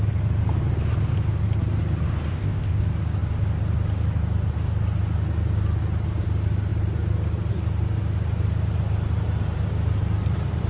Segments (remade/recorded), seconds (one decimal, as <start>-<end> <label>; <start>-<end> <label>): 0.0-2.3 recorded; 2.3-2.8 remade; 2.8-10.7 recorded